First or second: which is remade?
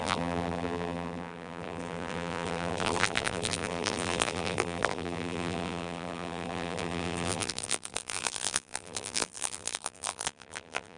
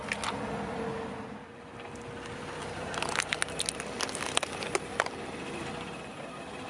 first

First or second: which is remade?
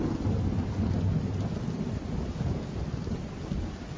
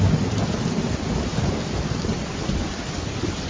second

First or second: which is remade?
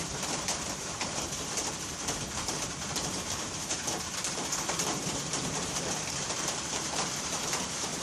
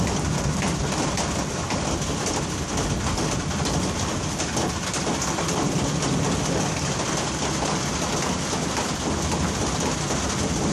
first